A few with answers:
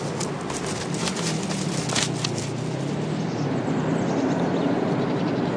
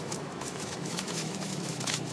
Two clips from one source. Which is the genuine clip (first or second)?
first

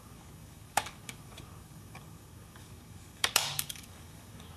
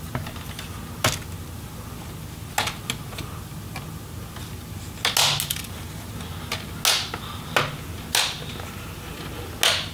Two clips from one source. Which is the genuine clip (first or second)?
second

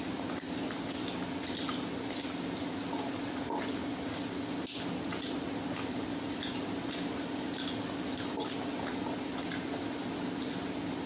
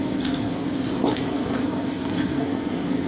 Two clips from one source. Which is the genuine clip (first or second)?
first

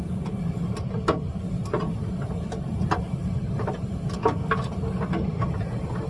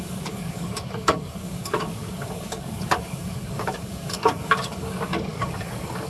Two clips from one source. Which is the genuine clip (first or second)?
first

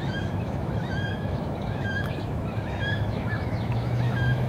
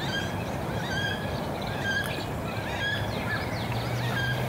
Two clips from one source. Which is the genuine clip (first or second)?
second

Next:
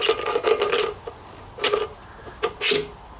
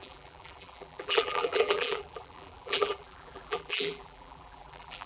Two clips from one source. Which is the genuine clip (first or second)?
first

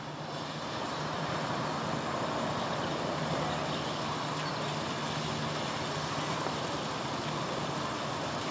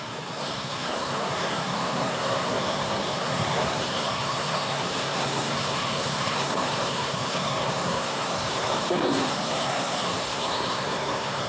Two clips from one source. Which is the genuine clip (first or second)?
first